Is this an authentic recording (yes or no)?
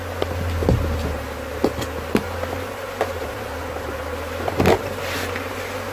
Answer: yes